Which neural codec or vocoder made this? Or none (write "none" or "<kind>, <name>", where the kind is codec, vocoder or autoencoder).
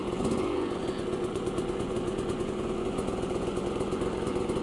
vocoder, Vocos